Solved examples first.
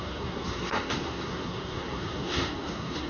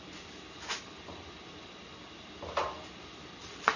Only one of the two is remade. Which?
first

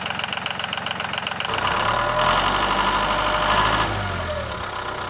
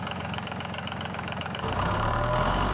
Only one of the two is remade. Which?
second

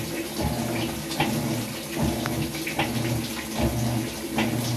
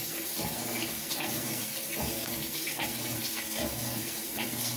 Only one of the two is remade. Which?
second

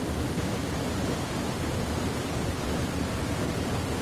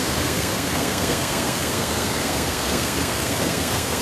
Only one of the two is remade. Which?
second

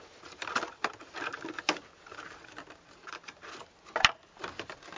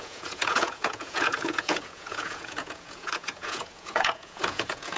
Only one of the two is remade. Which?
second